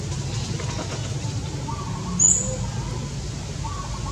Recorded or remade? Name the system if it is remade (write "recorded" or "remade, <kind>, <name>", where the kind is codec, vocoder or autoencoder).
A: recorded